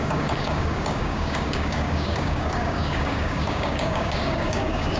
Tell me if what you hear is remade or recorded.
remade